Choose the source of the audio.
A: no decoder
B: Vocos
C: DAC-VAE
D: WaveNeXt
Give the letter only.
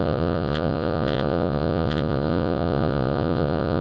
B